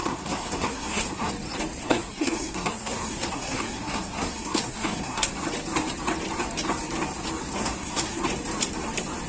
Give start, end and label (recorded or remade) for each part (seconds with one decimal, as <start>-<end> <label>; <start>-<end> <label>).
0.0-1.3 remade; 1.3-1.8 recorded; 1.8-5.3 remade; 5.3-7.6 recorded; 7.6-8.2 remade; 8.2-9.3 recorded